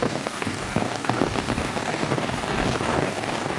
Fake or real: fake